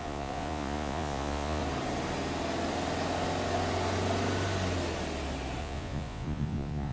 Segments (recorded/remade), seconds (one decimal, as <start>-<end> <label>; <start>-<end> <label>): 0.0-1.6 remade; 1.6-5.6 recorded; 5.6-6.9 remade